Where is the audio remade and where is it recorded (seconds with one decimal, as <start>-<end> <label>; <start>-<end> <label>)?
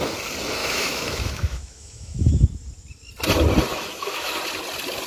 0.0-0.6 recorded; 0.6-2.3 remade; 2.3-3.7 recorded; 3.7-4.3 remade; 4.3-5.1 recorded